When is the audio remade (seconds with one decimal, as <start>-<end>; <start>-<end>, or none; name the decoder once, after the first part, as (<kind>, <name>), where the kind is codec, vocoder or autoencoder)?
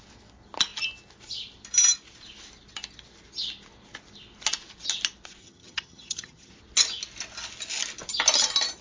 5.4-6.5 (vocoder, HiFi-GAN)